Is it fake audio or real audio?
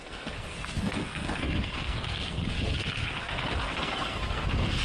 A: fake